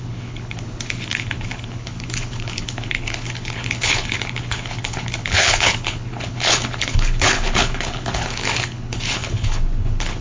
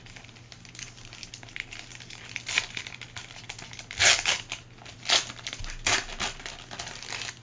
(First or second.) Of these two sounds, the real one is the second